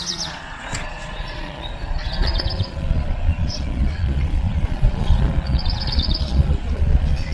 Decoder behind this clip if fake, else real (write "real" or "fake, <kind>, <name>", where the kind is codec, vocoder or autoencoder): fake, vocoder, Vocos